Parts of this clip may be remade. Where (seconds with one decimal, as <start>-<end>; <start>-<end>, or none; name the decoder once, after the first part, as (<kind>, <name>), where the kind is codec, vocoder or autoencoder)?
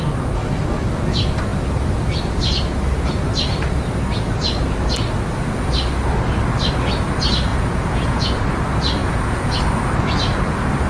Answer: 7.5-8.4 (vocoder, Vocos); 9.0-9.6